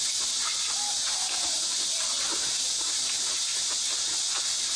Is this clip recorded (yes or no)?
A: yes